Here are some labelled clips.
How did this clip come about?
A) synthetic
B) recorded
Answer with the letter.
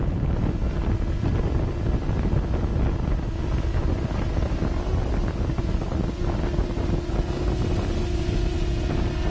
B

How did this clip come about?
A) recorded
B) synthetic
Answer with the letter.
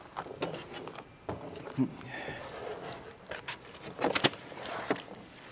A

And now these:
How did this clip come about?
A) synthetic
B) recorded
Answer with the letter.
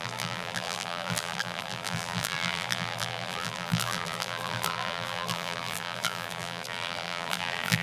A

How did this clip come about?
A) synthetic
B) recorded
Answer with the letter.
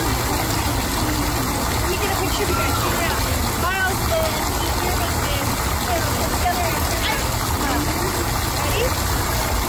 B